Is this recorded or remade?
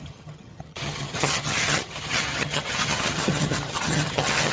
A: remade